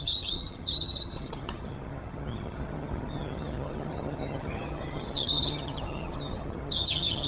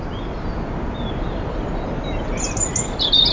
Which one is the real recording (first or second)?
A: second